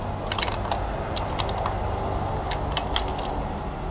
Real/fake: real